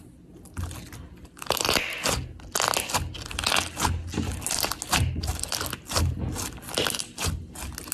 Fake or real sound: real